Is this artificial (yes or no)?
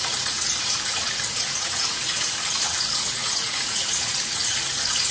yes